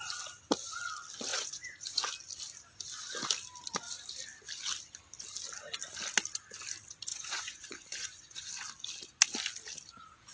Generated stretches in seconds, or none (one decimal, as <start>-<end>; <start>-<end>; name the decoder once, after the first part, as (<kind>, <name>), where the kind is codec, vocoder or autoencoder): 1.3-2.1 (vocoder, Vocos); 7.1-8.5